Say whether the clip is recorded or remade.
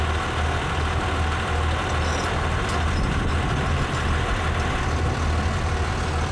recorded